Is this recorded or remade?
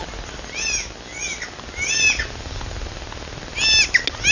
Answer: recorded